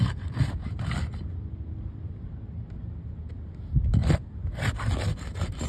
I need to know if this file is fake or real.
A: real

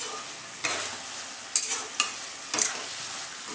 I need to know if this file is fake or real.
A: real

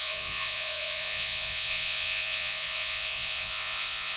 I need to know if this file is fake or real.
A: fake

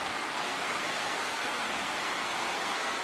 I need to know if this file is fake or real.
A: fake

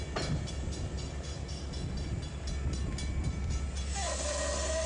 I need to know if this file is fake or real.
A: real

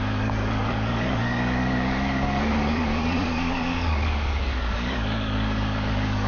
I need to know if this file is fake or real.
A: fake